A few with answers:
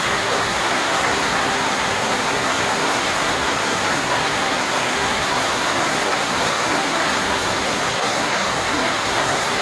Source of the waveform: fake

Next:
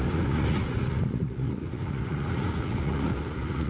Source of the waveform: fake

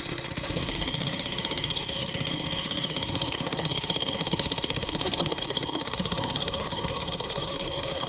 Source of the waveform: fake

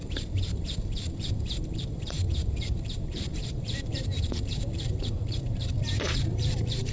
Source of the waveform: fake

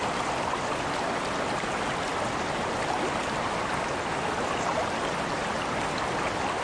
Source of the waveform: real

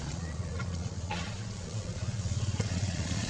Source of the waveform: fake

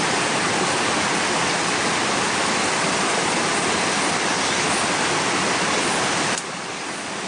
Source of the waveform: real